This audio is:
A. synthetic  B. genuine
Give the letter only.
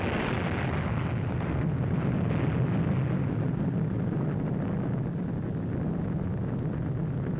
B